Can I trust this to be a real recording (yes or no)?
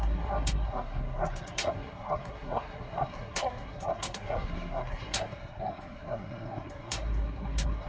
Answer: no